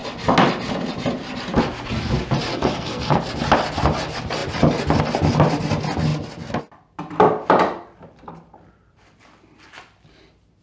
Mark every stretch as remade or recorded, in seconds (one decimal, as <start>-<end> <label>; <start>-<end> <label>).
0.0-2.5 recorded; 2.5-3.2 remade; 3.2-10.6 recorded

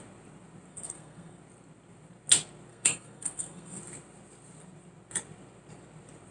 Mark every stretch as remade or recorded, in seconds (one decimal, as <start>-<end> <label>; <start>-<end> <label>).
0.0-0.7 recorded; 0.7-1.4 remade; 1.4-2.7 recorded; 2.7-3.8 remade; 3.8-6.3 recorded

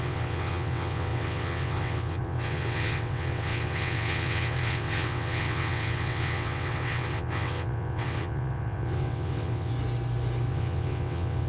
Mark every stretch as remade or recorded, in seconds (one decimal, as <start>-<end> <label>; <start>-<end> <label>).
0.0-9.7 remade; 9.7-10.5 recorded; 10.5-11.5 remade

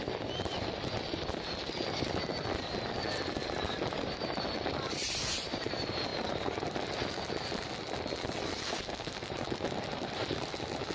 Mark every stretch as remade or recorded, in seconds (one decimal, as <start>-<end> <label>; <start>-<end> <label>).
0.0-10.9 recorded

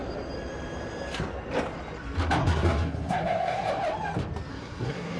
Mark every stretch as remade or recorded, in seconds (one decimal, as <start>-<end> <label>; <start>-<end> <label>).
0.0-2.4 recorded; 2.4-3.7 remade; 3.7-4.5 recorded; 4.5-5.2 remade

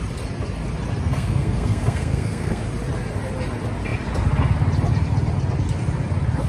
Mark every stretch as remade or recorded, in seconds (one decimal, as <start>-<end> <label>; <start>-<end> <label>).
0.0-1.0 recorded; 1.0-2.6 remade; 2.6-6.5 recorded

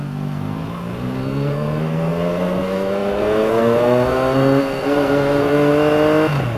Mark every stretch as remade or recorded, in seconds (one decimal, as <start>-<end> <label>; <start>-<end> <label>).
0.0-5.7 remade; 5.7-6.6 recorded

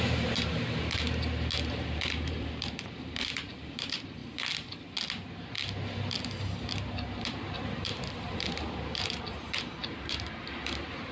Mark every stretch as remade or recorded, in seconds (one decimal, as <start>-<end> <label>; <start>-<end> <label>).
0.0-0.8 remade; 0.8-1.7 recorded; 1.7-4.2 remade; 4.2-6.9 recorded; 6.9-11.1 remade